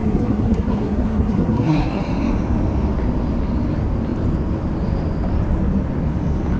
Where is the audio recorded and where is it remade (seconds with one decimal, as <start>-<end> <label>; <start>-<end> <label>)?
0.0-2.0 remade; 2.0-6.6 recorded